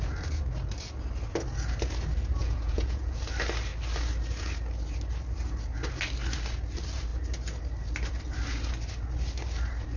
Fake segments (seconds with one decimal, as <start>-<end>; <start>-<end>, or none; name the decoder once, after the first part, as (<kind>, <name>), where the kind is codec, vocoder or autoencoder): 2.4-3.2 (vocoder, Vocos)